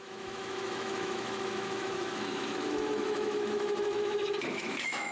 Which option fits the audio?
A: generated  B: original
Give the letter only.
A